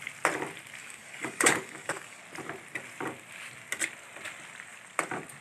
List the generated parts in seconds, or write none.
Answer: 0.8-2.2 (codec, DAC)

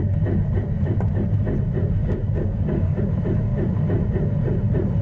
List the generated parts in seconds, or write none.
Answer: 2.0-3.0 (codec, DAC)

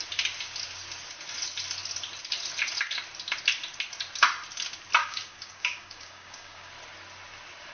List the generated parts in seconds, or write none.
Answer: 5.0-6.7 (codec, DAC)